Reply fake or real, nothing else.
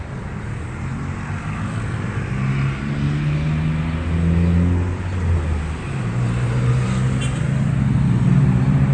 real